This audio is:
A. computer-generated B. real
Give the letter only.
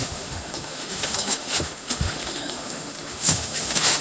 A